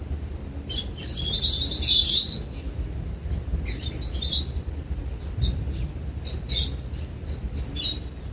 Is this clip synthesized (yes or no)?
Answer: no